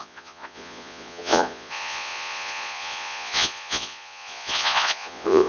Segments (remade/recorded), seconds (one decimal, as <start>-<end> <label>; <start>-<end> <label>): 0.0-5.5 remade